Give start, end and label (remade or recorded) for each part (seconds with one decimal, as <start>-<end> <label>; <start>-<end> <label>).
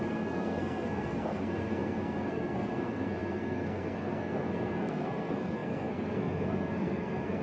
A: 0.0-7.4 remade